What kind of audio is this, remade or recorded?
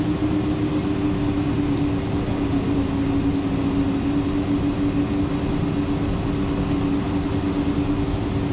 recorded